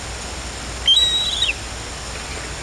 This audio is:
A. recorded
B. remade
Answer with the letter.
A